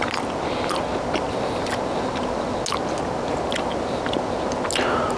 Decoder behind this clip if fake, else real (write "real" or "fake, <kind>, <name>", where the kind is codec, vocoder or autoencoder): real